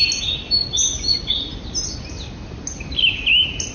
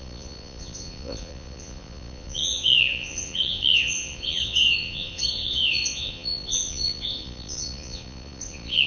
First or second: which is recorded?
first